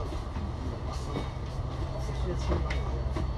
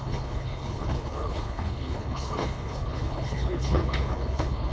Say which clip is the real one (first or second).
first